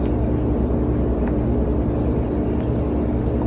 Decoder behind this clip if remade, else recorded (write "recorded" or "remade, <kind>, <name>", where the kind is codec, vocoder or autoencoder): recorded